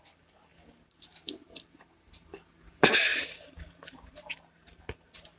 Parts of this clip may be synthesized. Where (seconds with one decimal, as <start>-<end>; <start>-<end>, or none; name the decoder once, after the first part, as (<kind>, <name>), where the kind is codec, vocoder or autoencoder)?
3.1-4.9 (vocoder, BigVGAN v2)